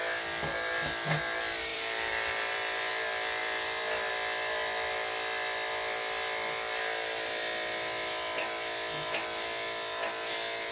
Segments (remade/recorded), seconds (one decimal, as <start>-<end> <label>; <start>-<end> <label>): 0.0-1.7 recorded; 1.7-2.9 remade; 2.9-3.4 recorded; 3.4-4.1 remade; 4.1-10.7 recorded